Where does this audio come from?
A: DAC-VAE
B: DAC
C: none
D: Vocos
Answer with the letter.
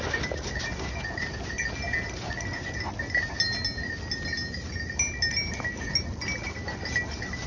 C